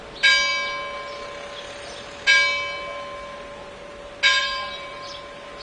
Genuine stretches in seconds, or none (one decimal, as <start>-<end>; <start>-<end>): 0.0-4.4; 5.1-5.6